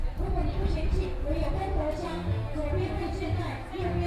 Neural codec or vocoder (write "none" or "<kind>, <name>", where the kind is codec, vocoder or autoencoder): none